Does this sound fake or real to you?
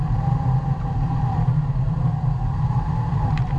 fake